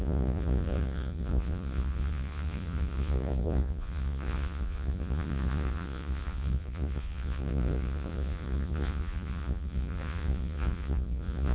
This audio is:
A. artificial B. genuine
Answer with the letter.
A